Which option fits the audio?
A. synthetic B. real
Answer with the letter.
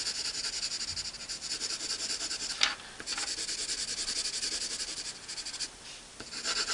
B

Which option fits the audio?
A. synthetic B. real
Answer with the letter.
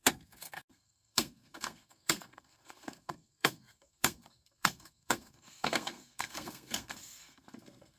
A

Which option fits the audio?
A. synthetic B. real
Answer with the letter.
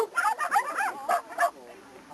B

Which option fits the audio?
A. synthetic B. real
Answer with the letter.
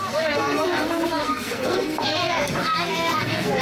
A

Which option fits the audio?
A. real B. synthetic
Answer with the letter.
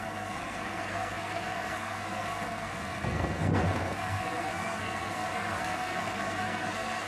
B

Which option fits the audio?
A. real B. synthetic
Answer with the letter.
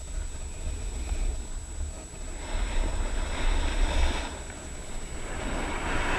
A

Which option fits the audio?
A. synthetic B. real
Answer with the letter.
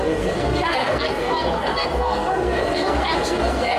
A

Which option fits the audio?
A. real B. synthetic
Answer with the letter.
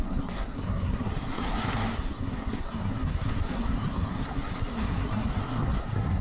B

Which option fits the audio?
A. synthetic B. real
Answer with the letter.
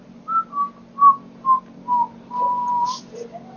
B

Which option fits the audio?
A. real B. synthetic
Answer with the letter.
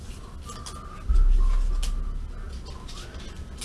A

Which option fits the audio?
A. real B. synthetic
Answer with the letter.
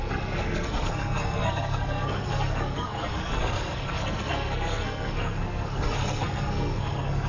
B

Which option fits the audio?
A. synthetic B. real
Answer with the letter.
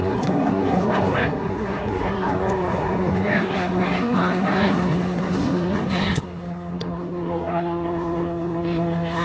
A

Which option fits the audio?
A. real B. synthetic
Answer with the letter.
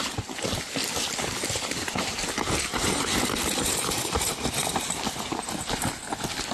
A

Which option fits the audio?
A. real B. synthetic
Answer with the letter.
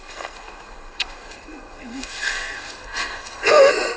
B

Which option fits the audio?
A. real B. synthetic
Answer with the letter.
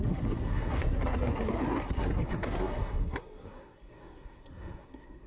B